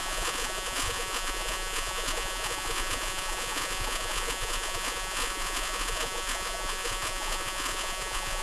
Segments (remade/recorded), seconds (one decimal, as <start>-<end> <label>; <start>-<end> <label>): 0.0-8.4 remade